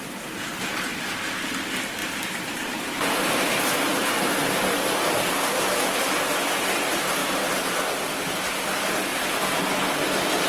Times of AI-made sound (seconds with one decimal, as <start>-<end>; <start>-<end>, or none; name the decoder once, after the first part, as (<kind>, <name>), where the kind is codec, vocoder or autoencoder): 2.0-3.1 (vocoder, BigVGAN v2); 7.2-7.8; 9.1-9.6